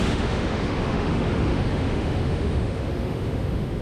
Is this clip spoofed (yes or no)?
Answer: yes